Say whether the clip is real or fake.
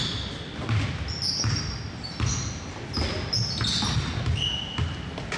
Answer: real